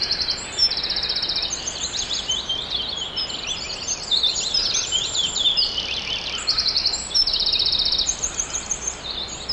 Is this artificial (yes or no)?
yes